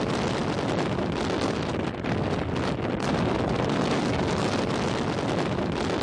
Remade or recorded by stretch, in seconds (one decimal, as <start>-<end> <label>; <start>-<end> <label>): 0.0-6.0 recorded